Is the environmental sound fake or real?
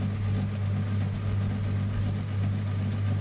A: real